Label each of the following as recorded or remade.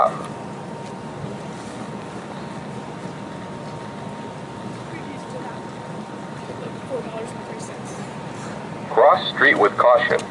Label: recorded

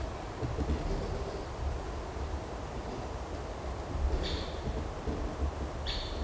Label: recorded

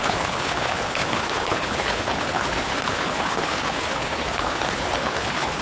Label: remade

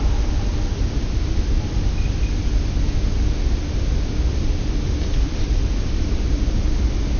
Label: recorded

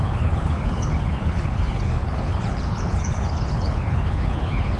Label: remade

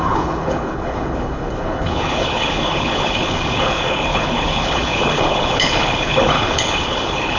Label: remade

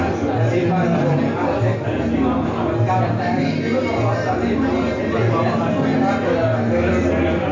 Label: recorded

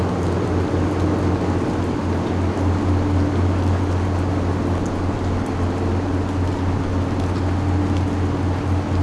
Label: recorded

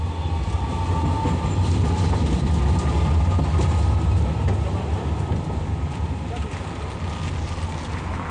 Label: recorded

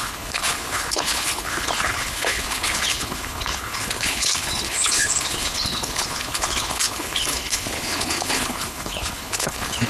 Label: remade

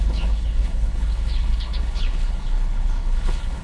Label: remade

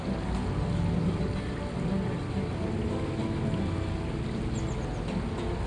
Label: recorded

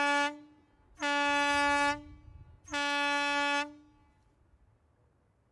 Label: recorded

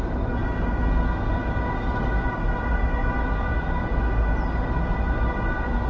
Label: recorded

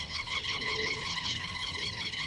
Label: remade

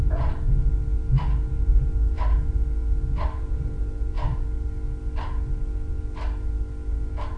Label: recorded